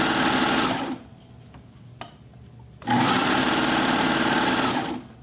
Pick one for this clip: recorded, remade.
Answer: recorded